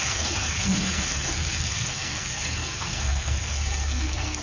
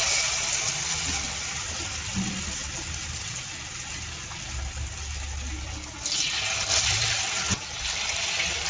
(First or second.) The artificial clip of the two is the first